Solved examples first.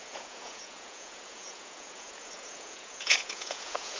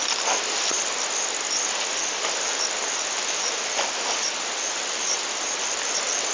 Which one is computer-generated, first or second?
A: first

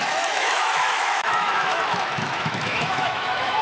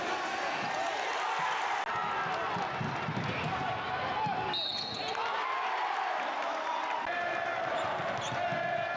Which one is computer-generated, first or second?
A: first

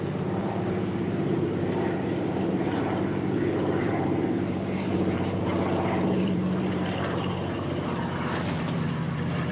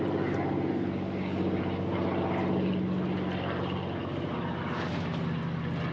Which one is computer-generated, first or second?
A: first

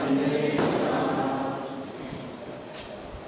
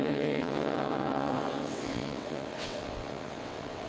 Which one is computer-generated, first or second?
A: second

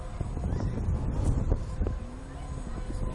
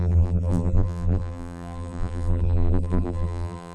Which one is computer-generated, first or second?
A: second